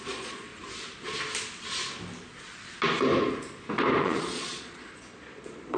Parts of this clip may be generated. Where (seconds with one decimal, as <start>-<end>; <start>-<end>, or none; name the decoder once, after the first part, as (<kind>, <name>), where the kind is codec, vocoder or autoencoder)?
0.0-0.5 (vocoder, Vocos); 4.0-5.8